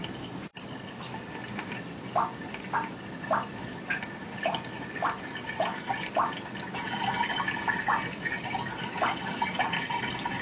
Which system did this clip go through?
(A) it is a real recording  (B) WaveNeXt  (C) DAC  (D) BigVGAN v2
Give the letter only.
A